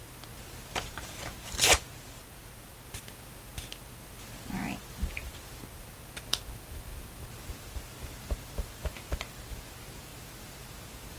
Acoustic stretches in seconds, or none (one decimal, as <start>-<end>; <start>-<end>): none